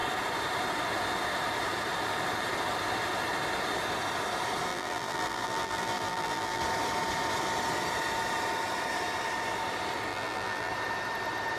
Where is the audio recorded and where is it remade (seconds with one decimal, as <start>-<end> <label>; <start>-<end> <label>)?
0.0-4.7 recorded; 4.7-6.6 remade; 6.6-10.1 recorded; 10.1-10.7 remade; 10.7-11.6 recorded